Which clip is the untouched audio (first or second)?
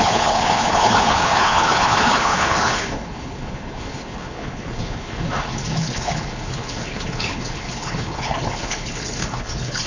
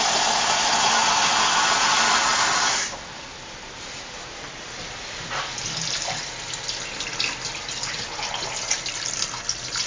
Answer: second